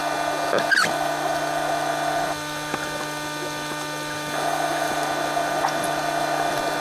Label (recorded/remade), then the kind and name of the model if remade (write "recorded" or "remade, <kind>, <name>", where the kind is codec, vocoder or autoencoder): recorded